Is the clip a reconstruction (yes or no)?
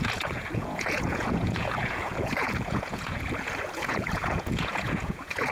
yes